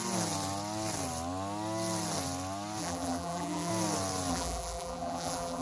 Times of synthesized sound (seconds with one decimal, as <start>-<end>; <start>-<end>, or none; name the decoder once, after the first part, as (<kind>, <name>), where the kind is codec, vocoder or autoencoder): 2.8-3.7 (vocoder, BigVGAN v2); 4.3-5.6